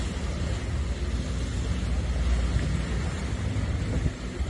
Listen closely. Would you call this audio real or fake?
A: real